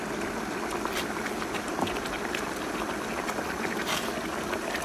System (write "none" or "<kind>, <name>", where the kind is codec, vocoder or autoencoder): none